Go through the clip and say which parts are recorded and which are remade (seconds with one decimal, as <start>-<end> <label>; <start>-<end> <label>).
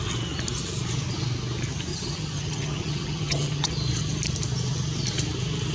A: 0.0-1.9 recorded; 1.9-3.7 remade; 3.7-5.7 recorded